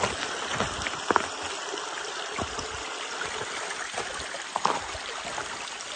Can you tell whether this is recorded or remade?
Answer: recorded